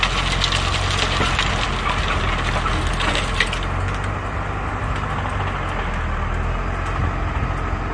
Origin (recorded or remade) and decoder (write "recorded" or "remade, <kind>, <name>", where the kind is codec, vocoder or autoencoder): recorded